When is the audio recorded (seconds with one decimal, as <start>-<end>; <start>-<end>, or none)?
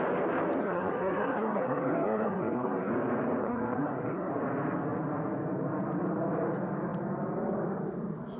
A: 0.0-0.6; 2.9-3.4; 4.3-8.4